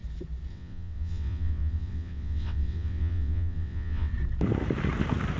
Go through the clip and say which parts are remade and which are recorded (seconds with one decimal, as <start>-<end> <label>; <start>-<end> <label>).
0.0-0.5 recorded; 0.5-4.1 remade; 4.1-5.4 recorded